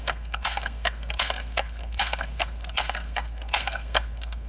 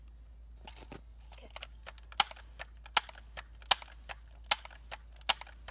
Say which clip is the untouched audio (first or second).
second